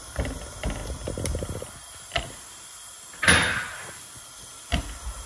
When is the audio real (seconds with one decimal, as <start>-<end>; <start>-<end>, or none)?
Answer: 0.0-5.3